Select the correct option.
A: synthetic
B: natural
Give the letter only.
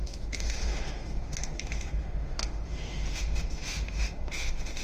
A